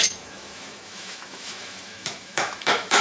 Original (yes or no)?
no